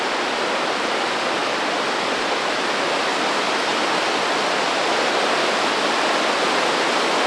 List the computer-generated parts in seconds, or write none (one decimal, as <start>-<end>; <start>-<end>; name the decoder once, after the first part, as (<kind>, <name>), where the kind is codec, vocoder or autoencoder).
none